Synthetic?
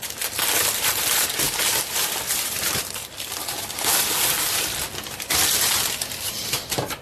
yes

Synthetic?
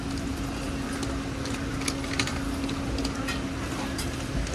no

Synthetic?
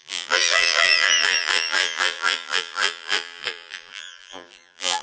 yes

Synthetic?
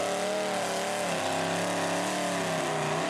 no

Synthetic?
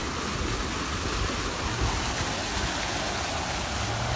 no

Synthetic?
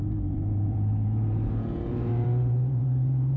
yes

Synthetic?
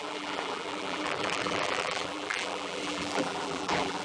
yes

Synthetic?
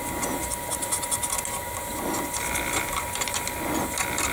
no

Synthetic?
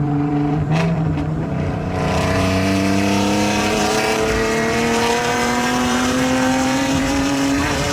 yes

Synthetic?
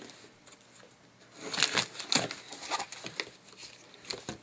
no